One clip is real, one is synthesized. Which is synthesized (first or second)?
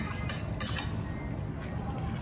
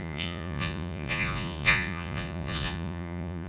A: second